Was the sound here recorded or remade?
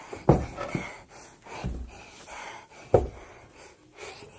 recorded